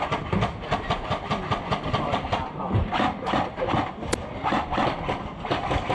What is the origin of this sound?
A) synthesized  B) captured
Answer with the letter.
B